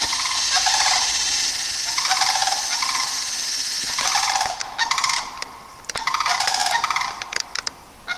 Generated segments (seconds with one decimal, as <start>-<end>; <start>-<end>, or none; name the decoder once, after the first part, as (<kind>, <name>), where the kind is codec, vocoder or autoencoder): none